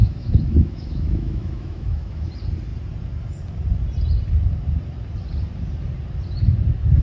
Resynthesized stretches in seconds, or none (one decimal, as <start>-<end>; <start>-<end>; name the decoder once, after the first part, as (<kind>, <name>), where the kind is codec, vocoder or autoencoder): 0.0-2.3 (autoencoder, DAC-VAE)